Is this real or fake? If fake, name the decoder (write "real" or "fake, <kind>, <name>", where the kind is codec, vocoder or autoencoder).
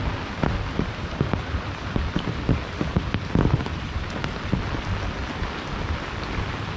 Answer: real